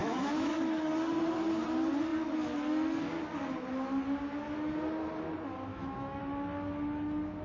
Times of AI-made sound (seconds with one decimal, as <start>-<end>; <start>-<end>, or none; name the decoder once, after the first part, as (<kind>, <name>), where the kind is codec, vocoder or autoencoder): 0.0-0.6 (autoencoder, DAC-VAE); 5.7-6.2